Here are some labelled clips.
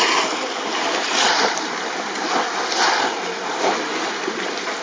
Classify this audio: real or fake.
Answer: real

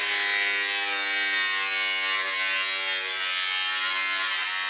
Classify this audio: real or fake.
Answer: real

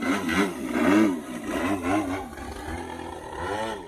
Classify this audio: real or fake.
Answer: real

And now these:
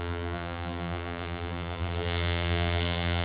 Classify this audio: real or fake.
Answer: fake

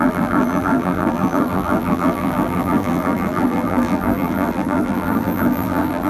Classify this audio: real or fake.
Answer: fake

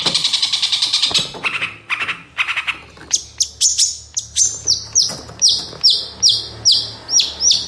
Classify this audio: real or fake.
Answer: real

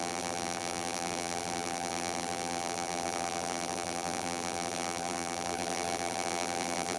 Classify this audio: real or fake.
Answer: fake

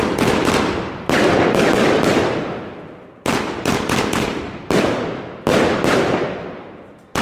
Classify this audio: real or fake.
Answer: real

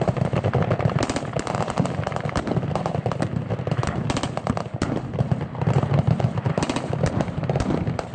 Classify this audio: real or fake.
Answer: real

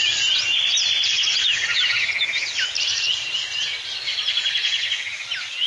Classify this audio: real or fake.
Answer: real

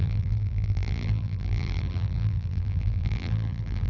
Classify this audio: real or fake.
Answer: fake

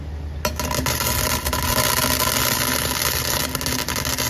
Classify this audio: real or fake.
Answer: real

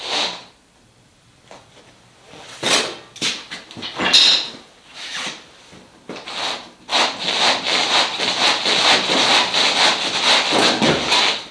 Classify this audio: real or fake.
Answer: real